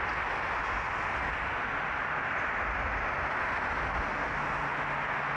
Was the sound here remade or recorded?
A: recorded